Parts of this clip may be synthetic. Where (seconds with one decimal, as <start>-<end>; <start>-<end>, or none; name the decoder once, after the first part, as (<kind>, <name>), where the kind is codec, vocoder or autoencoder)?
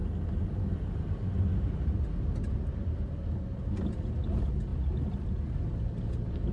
none